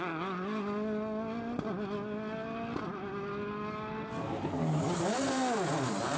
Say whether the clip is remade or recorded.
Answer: recorded